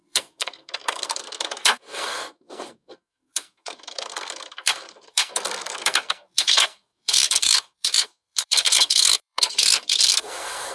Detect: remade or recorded remade